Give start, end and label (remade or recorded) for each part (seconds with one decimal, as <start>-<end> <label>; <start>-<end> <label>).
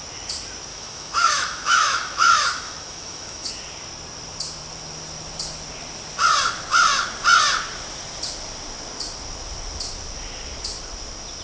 0.0-0.7 recorded; 0.7-3.5 remade; 3.5-11.4 recorded